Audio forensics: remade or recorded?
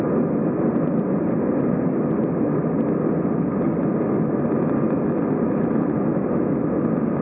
recorded